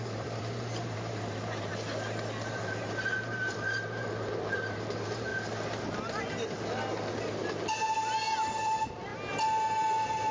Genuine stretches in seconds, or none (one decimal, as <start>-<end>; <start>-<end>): 1.7-2.5; 5.3-7.4; 9.1-9.9